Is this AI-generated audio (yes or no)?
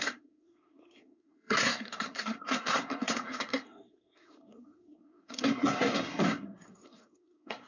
yes